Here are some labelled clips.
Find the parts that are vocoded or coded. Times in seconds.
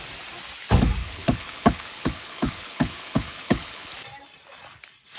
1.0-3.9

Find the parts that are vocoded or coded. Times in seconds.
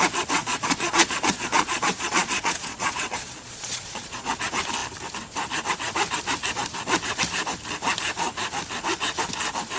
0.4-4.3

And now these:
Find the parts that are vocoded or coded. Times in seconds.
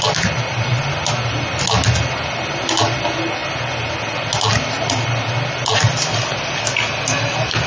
none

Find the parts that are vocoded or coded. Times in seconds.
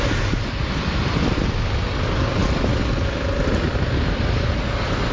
none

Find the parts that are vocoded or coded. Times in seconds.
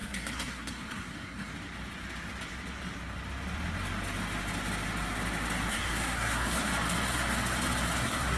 0.0-1.5; 5.7-6.7; 8.0-8.4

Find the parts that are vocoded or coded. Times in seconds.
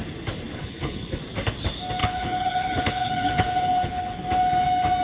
0.6-1.2; 2.0-4.2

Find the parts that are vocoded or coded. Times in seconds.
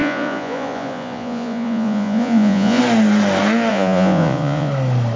0.0-2.8; 3.7-4.7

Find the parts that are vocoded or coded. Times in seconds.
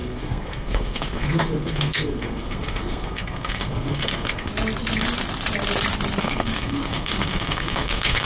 0.0-4.5; 6.2-8.3